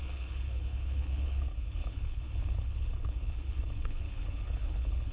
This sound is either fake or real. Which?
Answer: fake